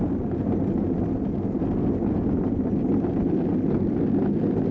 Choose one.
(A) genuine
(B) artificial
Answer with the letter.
A